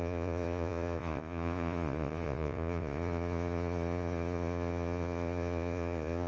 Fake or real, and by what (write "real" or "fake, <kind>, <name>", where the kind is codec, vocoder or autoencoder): fake, vocoder, Vocos